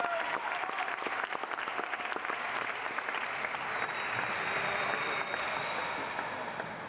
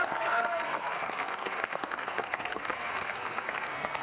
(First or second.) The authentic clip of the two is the first